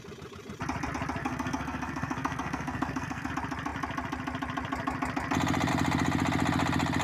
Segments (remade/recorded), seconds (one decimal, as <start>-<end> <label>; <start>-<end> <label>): 0.0-1.2 recorded; 1.2-3.3 remade; 3.3-7.0 recorded